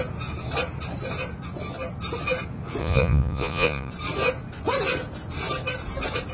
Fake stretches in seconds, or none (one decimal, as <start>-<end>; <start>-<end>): 2.8-3.9